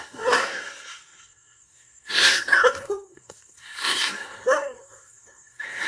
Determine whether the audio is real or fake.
fake